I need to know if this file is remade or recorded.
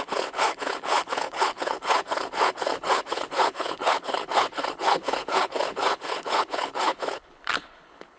remade